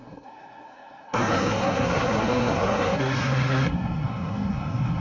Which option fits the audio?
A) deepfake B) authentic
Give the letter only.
A